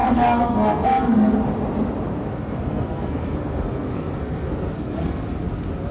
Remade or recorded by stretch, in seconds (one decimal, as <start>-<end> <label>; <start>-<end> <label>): 0.0-1.4 remade; 1.4-2.3 recorded; 2.3-5.2 remade; 5.2-5.9 recorded